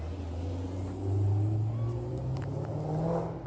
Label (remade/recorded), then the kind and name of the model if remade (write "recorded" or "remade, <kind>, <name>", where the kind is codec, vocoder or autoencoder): recorded